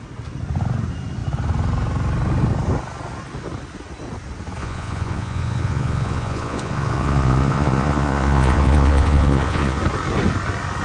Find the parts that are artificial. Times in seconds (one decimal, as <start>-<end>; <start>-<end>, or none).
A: 4.6-9.8